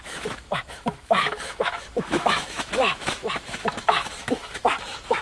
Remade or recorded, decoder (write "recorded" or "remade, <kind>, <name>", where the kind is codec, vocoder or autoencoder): remade, autoencoder, DAC-VAE